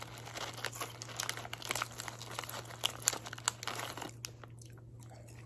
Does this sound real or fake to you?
real